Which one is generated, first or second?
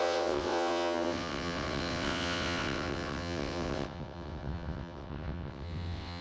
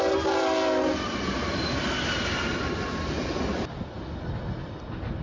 first